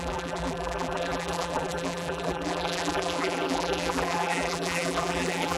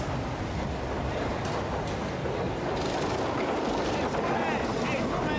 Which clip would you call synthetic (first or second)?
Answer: first